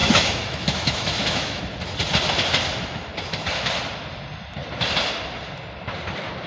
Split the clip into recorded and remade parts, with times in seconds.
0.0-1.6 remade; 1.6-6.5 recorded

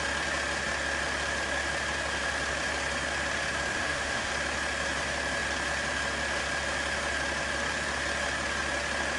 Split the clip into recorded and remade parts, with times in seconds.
0.0-3.7 recorded; 3.7-4.3 remade; 4.3-9.2 recorded

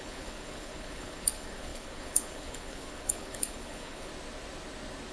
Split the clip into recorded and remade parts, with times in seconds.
0.0-4.1 remade; 4.1-5.1 recorded

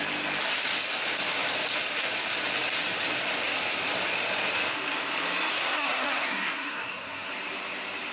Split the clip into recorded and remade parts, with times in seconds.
0.0-5.5 recorded; 5.5-7.3 remade; 7.3-8.1 recorded